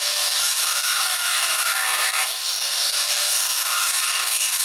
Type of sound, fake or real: fake